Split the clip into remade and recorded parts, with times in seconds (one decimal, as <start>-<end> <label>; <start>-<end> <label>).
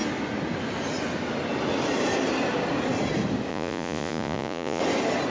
0.0-3.5 recorded; 3.5-4.8 remade; 4.8-5.3 recorded